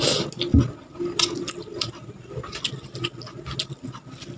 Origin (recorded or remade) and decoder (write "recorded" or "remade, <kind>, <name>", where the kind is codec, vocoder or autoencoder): recorded